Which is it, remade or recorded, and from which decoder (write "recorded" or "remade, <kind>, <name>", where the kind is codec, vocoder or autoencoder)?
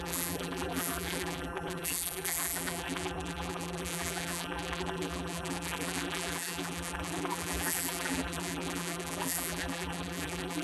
remade, vocoder, BigVGAN v2